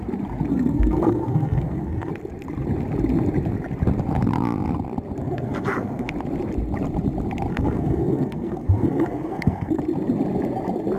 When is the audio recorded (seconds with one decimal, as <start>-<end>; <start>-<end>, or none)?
0.0-0.5; 2.1-5.2; 6.1-7.5; 9.8-11.0